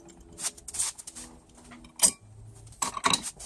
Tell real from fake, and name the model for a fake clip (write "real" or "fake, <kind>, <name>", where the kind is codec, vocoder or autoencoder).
real